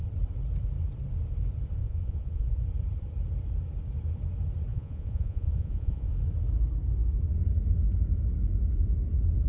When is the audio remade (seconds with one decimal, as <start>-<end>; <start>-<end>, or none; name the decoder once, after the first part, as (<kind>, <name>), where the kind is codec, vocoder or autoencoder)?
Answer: 1.8-2.6 (vocoder, Vocos); 4.7-6.1